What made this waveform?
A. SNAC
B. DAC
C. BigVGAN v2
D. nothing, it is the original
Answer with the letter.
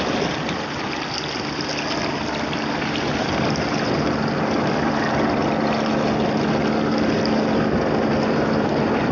D